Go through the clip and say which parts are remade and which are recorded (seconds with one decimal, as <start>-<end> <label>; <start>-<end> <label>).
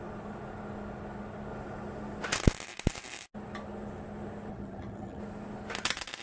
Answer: 0.0-4.5 recorded; 4.5-5.2 remade; 5.2-6.2 recorded